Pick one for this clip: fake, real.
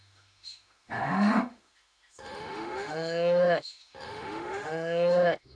fake